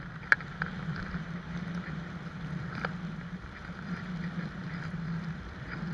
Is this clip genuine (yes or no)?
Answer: no